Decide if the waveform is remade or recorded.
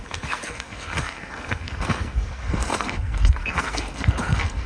remade